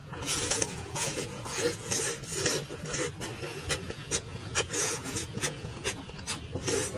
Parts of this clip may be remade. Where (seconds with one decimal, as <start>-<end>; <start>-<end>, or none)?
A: 0.0-2.0; 3.5-6.0